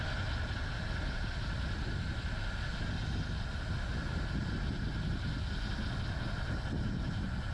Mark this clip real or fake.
real